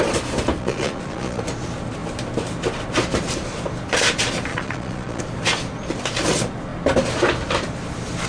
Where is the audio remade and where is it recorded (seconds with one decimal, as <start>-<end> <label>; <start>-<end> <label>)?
0.0-0.6 recorded; 0.6-1.4 remade; 1.4-4.5 recorded; 4.5-5.2 remade; 5.2-8.3 recorded